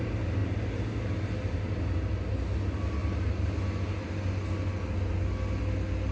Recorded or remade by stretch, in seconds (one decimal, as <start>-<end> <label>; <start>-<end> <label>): 0.0-6.1 recorded